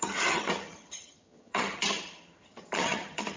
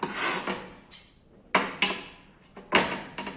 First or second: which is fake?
first